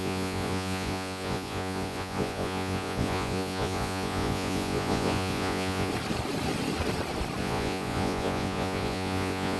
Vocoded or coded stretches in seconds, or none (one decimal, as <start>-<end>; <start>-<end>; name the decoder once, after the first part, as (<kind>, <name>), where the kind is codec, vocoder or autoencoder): 0.0-5.9 (vocoder, Vocos); 7.4-9.6